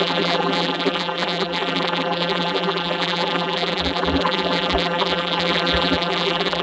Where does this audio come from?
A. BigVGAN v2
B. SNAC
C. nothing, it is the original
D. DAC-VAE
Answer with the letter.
A